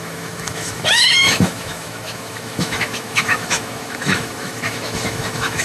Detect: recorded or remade remade